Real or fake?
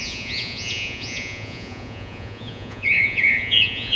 fake